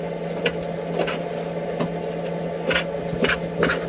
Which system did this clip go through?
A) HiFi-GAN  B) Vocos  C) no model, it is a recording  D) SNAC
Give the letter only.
C